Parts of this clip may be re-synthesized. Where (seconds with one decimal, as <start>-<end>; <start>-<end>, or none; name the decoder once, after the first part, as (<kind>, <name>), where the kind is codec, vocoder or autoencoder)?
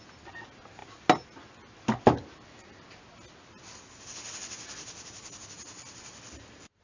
none